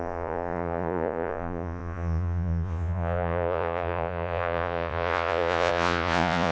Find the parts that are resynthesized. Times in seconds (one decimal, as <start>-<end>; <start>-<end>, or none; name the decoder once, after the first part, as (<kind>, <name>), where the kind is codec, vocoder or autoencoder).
0.0-6.5 (vocoder, Vocos)